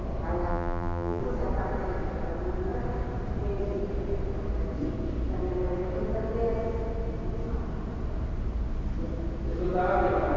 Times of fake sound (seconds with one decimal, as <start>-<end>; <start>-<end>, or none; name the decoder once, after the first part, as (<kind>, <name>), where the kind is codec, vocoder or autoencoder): 0.5-1.2 (vocoder, BigVGAN v2)